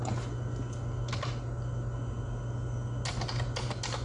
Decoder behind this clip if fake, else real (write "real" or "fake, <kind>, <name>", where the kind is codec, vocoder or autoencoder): real